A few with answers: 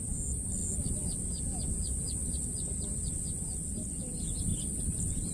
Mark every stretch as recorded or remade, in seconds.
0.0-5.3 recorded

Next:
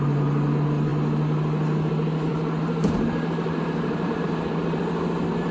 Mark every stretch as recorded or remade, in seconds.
0.0-2.3 recorded; 2.3-4.8 remade; 4.8-5.5 recorded

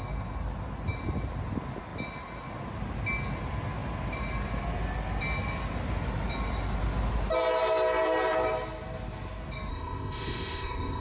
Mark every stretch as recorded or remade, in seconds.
0.0-9.7 recorded; 9.7-11.0 remade

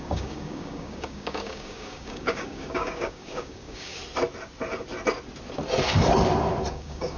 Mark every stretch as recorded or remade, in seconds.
0.0-4.0 remade; 4.0-6.7 recorded; 6.7-7.2 remade

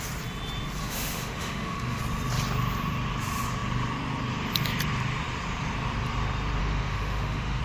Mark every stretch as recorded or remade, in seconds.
0.0-0.8 recorded; 0.8-2.0 remade; 2.0-6.6 recorded; 6.6-7.6 remade

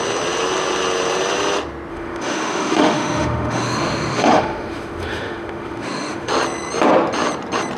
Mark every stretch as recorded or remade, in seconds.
0.0-1.9 recorded; 1.9-6.3 remade; 6.3-7.8 recorded